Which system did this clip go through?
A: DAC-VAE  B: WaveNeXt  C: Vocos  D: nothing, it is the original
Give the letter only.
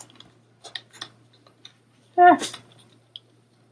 D